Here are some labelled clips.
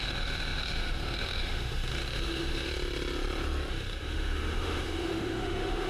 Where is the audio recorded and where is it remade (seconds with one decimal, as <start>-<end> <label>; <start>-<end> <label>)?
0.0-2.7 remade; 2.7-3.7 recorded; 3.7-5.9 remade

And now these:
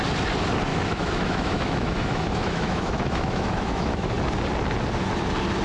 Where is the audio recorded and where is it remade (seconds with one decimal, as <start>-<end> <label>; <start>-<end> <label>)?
0.0-0.7 recorded; 0.7-4.1 remade; 4.1-5.6 recorded

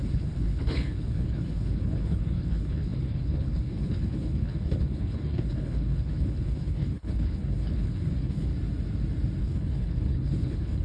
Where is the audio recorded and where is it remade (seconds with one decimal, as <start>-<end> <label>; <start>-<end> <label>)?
0.0-8.5 remade; 8.5-9.4 recorded; 9.4-10.8 remade

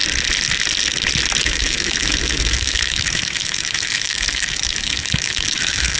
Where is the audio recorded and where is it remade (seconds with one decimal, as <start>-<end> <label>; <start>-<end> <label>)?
0.0-1.4 recorded; 1.4-6.0 remade

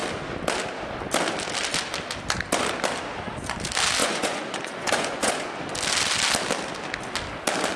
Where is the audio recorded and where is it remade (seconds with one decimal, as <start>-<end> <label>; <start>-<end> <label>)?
0.0-4.0 recorded; 4.0-5.5 remade; 5.5-7.8 recorded

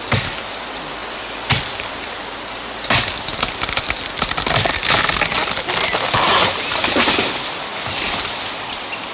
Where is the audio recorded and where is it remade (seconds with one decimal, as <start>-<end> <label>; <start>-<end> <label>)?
0.0-9.1 recorded

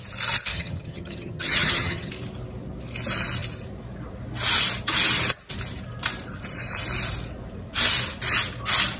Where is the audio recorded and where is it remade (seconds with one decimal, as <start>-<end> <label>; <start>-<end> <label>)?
0.0-0.5 recorded; 0.5-2.1 remade; 2.1-9.0 recorded